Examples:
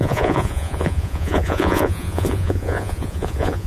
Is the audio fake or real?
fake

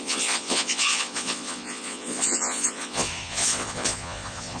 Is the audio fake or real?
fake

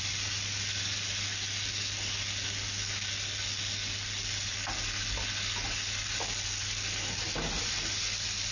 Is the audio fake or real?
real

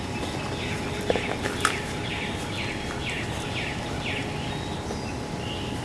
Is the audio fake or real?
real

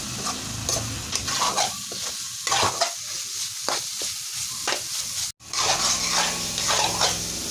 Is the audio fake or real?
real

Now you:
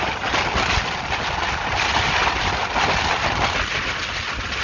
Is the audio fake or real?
real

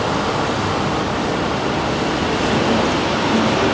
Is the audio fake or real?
real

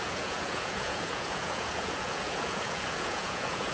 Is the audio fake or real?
fake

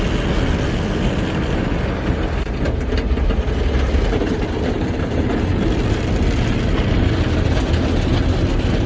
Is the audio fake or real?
real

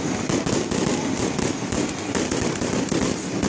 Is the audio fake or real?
real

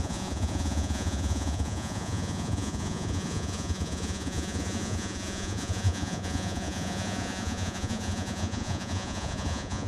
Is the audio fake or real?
fake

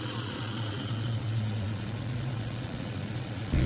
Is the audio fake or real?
fake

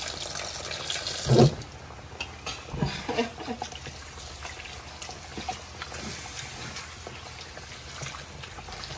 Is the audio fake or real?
real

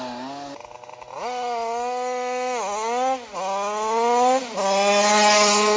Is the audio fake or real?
real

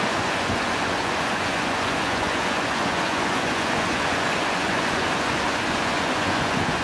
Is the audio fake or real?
fake